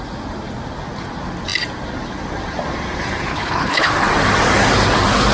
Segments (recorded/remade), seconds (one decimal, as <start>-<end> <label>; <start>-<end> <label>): 0.0-3.3 recorded; 3.3-3.9 remade; 3.9-5.3 recorded